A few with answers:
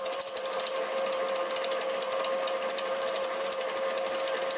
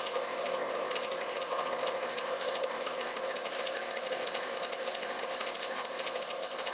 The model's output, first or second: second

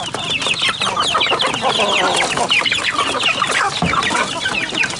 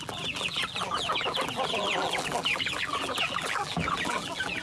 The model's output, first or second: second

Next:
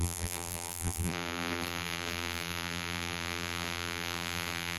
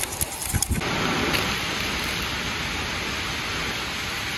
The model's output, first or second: first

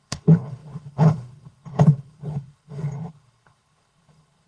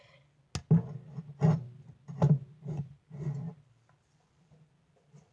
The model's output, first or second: first